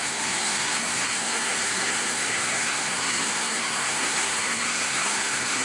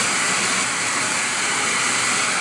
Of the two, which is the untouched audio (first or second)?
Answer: second